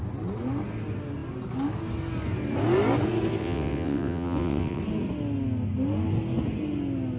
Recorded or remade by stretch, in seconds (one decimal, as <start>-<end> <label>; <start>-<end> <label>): 0.0-3.4 recorded; 3.4-4.8 remade; 4.8-7.2 recorded